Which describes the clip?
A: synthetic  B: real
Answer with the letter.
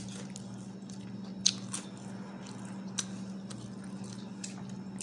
B